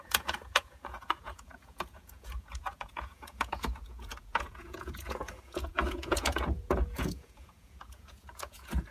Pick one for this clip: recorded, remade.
remade